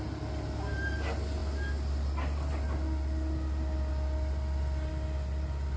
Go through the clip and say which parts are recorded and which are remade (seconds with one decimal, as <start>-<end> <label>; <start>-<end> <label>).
0.0-5.8 recorded